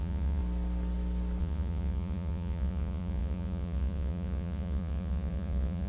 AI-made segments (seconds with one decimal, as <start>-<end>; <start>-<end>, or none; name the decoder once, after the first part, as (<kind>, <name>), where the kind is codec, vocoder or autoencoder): 0.0-0.4 (vocoder, Vocos); 1.4-5.9